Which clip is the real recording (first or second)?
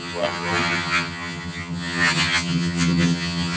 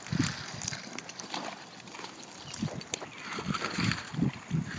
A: second